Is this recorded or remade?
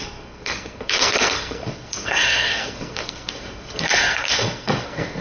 remade